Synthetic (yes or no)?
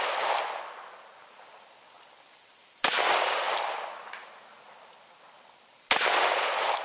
no